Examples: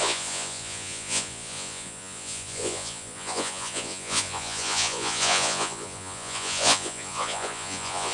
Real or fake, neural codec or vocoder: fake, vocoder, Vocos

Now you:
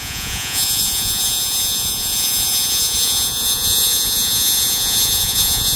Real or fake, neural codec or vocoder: fake, vocoder, Vocos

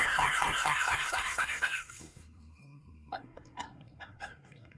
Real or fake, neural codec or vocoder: fake, codec, SNAC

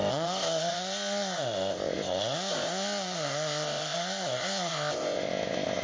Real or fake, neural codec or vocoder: fake, codec, ZipCodec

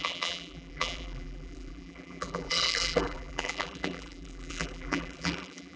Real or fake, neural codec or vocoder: fake, vocoder, BigVGAN v2